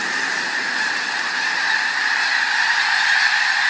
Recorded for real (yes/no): yes